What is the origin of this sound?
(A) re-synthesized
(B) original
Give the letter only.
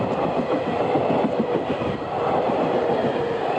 B